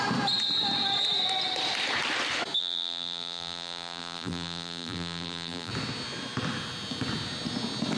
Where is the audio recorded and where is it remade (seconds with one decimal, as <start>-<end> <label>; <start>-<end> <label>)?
0.0-2.6 recorded; 2.6-5.7 remade; 5.7-8.0 recorded